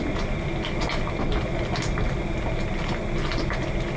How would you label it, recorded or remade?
recorded